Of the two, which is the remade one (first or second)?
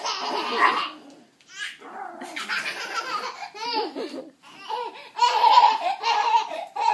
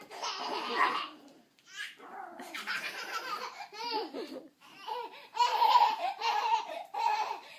second